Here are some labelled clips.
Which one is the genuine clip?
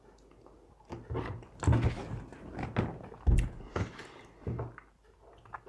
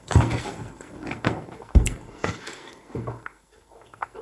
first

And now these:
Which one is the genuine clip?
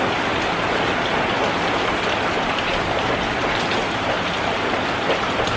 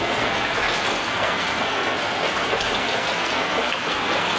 first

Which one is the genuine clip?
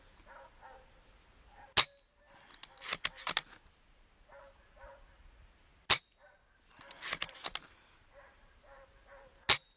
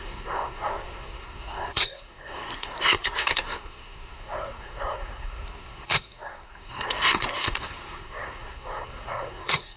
first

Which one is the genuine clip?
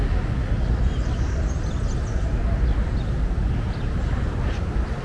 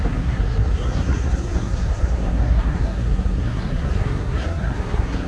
first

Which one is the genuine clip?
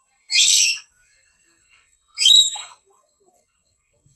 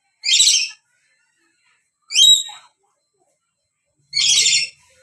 second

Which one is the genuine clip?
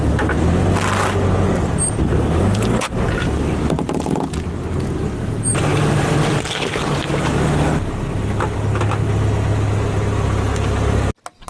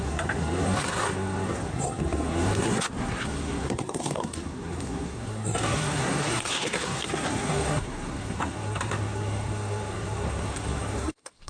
first